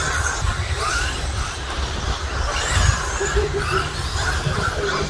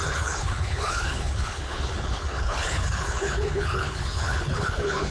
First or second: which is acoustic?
first